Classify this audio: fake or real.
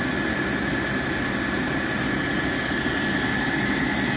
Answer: real